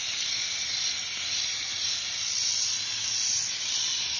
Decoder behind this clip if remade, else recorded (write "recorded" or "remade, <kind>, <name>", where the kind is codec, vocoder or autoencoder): recorded